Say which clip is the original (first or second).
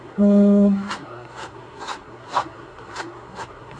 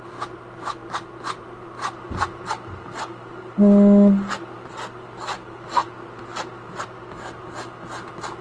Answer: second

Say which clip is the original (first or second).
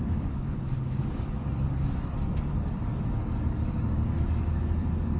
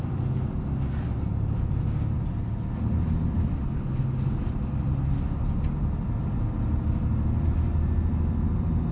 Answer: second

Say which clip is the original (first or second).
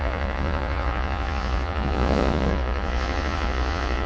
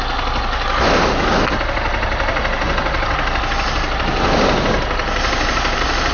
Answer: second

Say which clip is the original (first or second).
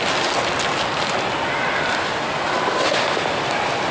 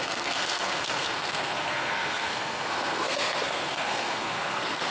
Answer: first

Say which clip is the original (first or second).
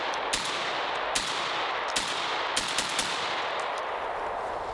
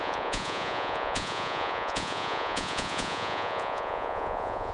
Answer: first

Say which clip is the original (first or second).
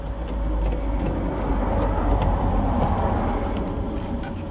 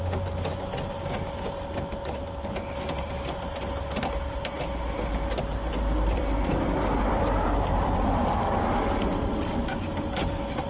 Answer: first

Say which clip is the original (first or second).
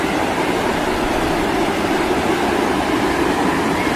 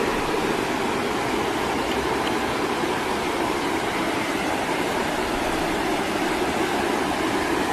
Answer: first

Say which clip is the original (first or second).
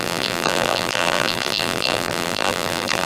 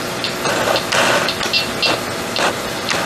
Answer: second